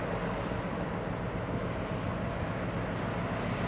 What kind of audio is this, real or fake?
real